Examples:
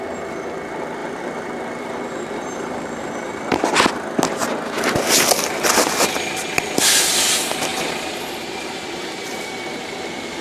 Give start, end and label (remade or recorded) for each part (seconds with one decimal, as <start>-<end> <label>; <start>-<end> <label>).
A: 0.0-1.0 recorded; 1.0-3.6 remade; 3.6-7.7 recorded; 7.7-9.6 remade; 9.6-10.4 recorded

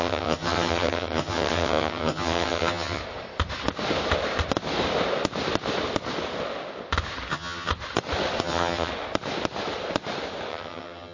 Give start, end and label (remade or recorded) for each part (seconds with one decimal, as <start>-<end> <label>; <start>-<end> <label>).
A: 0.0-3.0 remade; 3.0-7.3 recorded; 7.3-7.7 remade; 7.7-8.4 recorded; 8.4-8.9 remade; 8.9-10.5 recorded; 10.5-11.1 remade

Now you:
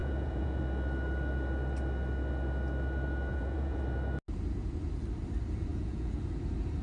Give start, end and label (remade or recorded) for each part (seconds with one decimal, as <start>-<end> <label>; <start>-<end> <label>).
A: 0.0-0.6 remade; 0.6-3.3 recorded; 3.3-3.8 remade; 3.8-5.7 recorded; 5.7-6.2 remade; 6.2-6.8 recorded

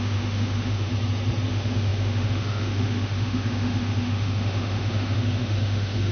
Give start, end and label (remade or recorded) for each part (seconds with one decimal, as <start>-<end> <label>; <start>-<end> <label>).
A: 0.0-0.9 remade; 0.9-1.5 recorded; 1.5-6.1 remade

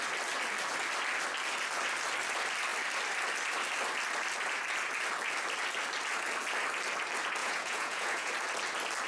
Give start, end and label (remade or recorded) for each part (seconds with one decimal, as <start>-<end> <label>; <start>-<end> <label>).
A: 0.0-7.4 recorded; 7.4-8.3 remade; 8.3-9.1 recorded

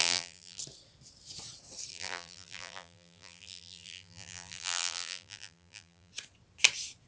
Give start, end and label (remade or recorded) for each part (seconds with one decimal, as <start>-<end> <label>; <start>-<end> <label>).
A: 0.0-0.6 remade; 0.6-1.9 recorded; 1.9-6.1 remade; 6.1-7.1 recorded

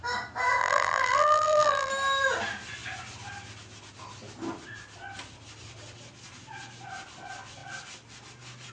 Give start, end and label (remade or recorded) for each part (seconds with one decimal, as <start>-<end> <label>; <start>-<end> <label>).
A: 0.0-0.6 recorded; 0.6-1.9 remade; 1.9-8.7 recorded

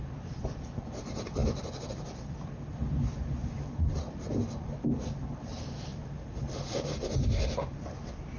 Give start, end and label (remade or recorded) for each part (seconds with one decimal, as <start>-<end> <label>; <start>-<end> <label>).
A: 0.0-8.4 recorded